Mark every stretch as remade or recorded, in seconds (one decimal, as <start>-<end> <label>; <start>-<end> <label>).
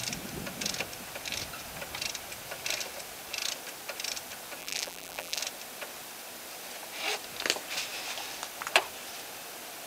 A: 0.0-4.6 recorded; 4.6-5.4 remade; 5.4-9.9 recorded